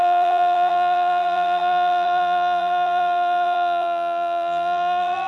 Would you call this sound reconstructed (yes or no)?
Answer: yes